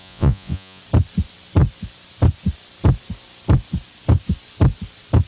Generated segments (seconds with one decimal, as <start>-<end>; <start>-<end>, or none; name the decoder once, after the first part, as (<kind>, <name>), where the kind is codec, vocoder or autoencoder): 0.0-0.8 (vocoder, Vocos)